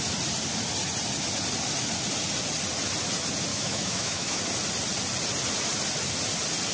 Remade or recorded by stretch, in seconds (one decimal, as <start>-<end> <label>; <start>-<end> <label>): 0.0-3.5 recorded; 3.5-4.4 remade; 4.4-6.7 recorded